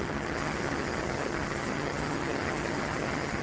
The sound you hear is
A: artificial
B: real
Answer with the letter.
A